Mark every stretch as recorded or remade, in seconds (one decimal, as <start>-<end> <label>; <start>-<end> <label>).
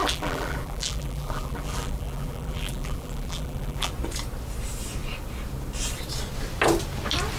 0.0-3.9 remade; 3.9-7.4 recorded